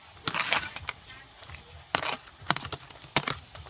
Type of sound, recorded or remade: recorded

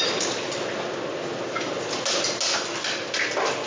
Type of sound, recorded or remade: recorded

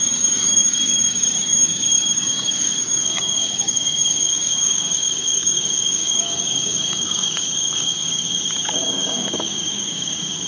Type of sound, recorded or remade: remade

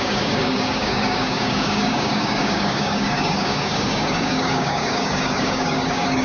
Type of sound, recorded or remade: remade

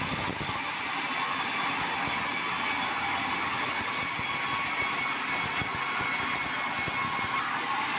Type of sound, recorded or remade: recorded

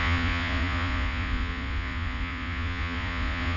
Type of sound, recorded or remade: remade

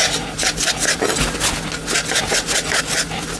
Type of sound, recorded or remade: recorded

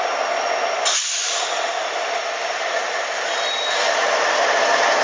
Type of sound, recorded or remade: recorded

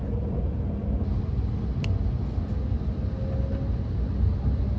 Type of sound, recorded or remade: recorded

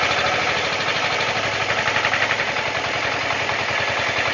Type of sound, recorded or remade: recorded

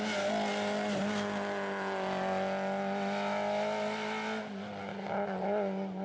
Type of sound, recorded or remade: recorded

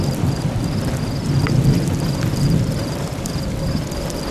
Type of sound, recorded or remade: recorded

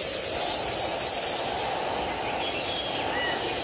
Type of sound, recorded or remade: recorded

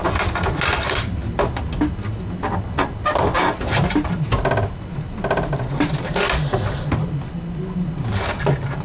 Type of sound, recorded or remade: recorded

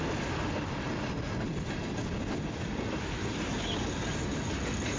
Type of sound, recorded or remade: recorded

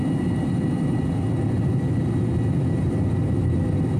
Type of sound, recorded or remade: recorded